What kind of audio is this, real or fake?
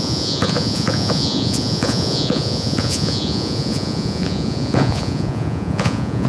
fake